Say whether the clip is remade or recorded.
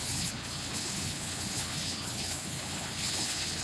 remade